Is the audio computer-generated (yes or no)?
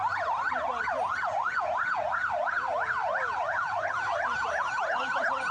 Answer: no